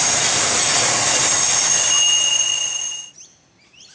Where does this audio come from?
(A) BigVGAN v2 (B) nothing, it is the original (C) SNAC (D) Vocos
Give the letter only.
B